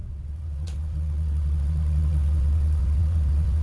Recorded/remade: remade